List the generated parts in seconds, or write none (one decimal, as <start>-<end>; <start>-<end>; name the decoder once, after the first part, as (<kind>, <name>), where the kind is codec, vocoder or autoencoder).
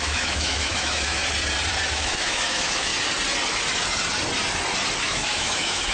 0.0-1.2 (autoencoder, DAC-VAE); 1.9-2.9; 5.0-5.9